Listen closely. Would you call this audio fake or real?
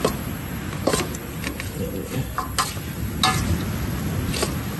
real